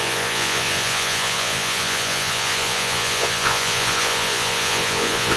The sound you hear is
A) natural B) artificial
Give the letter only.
B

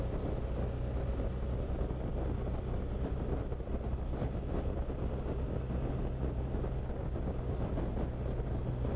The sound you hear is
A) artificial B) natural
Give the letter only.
B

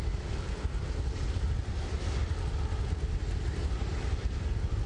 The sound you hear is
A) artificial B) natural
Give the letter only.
B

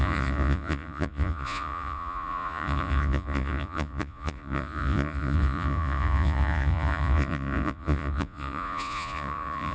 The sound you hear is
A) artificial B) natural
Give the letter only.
A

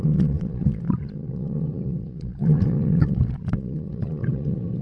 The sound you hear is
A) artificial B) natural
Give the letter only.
A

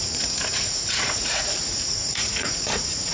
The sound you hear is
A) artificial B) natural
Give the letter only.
A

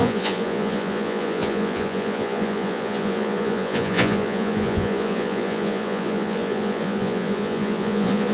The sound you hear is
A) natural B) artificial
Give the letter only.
B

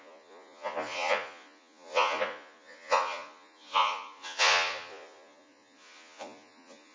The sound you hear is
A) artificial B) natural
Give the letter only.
A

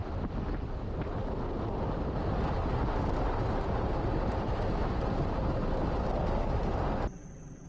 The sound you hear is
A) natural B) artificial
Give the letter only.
A